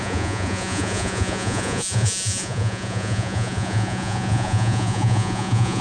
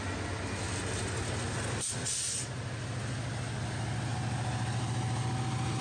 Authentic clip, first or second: second